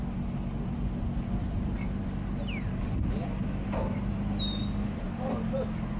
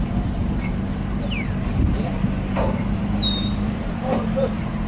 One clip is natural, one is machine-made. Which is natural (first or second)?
first